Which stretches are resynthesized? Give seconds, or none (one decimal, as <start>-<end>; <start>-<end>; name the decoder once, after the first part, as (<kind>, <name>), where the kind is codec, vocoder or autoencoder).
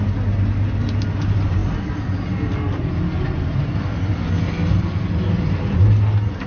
none